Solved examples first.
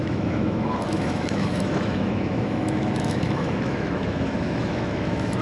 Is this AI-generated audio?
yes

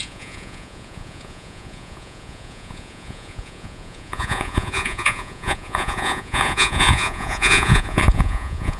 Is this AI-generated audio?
yes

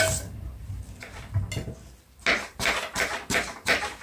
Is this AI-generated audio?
no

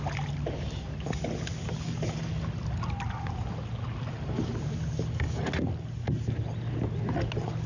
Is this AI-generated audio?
no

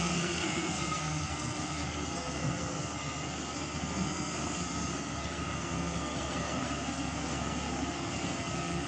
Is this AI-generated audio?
yes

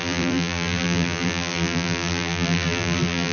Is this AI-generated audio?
yes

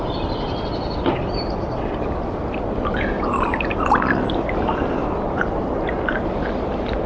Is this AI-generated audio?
no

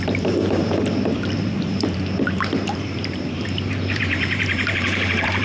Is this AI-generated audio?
yes